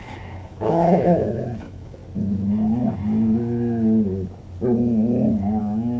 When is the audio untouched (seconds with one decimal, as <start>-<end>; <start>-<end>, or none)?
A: 2.0-5.6

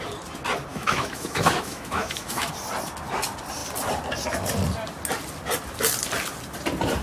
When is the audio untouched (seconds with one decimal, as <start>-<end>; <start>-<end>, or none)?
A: 0.0-0.7; 2.5-7.0

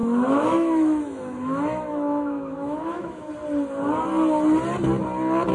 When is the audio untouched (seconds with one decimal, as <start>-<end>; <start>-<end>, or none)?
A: 3.3-5.5

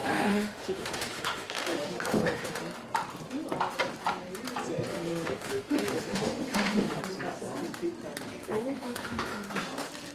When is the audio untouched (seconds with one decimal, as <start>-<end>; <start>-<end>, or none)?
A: 2.6-4.9; 7.0-8.4; 9.5-10.1

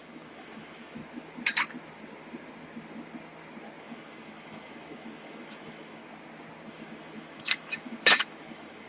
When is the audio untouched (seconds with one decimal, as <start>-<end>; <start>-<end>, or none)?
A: 1.0-3.8; 6.0-6.7